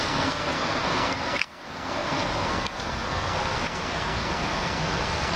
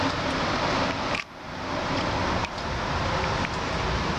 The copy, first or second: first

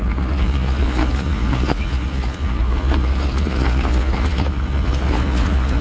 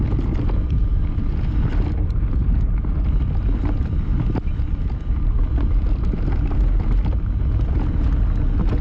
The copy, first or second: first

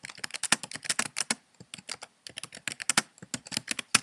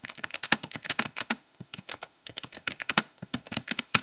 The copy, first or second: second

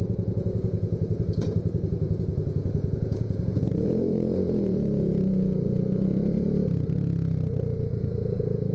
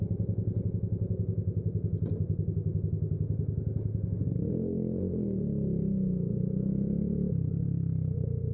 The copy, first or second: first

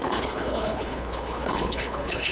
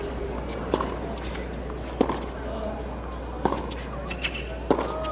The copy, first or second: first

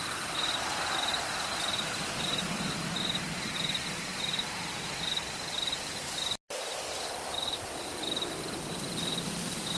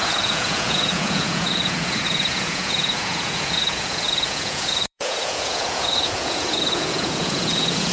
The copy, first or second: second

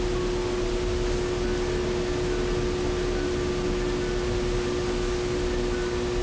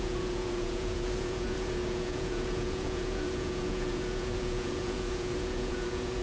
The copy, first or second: second